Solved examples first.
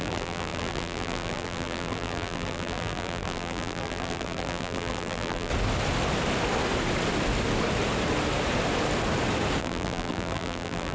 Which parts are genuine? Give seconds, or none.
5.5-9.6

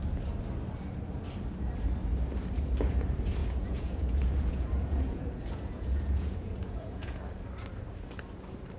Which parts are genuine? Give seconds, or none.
0.0-3.4; 7.2-8.8

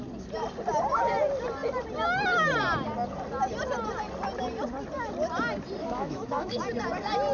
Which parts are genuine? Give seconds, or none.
0.0-5.8; 6.6-7.3